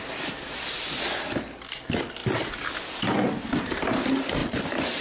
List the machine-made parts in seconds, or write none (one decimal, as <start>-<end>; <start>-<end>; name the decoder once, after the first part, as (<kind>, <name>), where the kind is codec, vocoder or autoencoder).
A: none